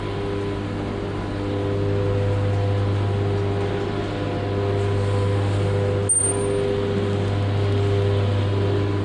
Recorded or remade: recorded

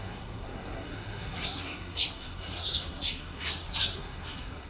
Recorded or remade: remade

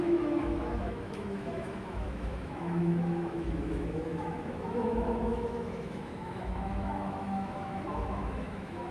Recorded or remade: remade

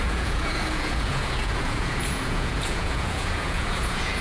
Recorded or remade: remade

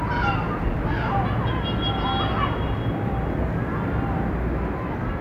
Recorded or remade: recorded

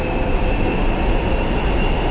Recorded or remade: recorded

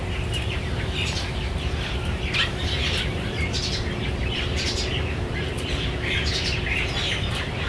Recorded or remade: remade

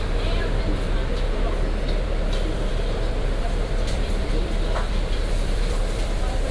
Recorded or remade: remade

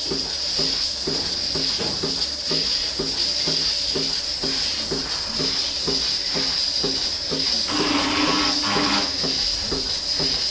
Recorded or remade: recorded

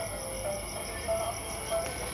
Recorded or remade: recorded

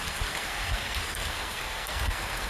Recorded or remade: remade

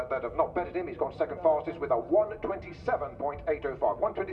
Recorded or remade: recorded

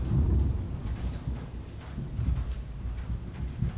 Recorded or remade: remade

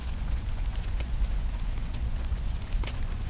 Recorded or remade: remade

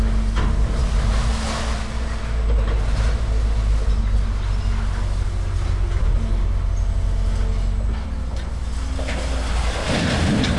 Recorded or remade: recorded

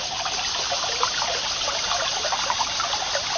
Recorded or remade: recorded